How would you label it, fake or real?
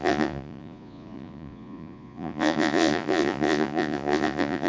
fake